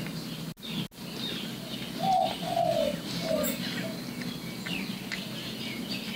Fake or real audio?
real